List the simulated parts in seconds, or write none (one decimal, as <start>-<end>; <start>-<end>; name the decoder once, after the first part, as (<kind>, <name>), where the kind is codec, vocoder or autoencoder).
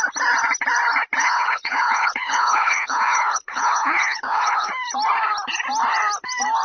1.2-4.7 (codec, HILCodec)